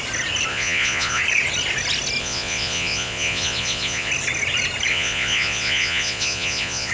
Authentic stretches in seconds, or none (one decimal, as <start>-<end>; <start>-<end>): 0.0-0.5; 1.2-2.2; 4.1-4.9